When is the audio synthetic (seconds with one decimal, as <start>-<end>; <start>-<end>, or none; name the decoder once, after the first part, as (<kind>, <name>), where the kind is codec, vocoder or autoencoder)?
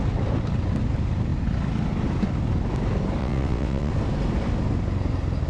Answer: 3.2-3.9 (vocoder, WaveNeXt)